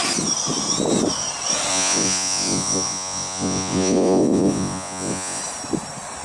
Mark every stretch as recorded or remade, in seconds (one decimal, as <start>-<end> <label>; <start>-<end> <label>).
0.0-1.7 recorded; 1.7-5.4 remade; 5.4-6.2 recorded